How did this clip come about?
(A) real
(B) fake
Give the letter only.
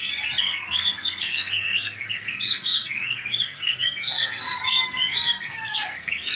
B